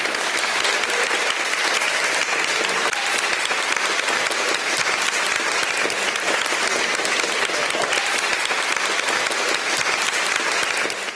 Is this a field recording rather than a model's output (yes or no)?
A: yes